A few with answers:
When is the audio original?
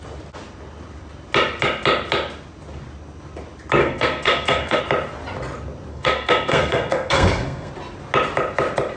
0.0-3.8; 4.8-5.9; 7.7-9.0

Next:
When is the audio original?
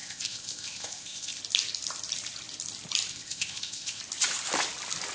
1.4-3.1; 4.0-5.1